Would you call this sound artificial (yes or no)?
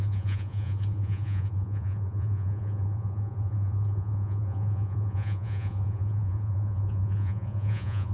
yes